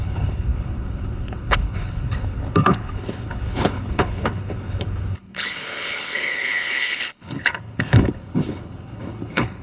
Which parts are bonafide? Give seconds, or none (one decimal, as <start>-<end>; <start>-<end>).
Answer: none

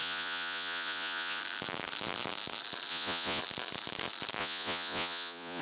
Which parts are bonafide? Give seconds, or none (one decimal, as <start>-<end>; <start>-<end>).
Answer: 1.4-2.9; 3.4-4.4

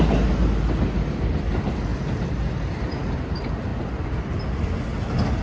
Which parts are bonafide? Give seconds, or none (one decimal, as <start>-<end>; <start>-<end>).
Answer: 0.0-5.4